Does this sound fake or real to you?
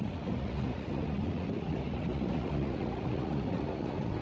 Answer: fake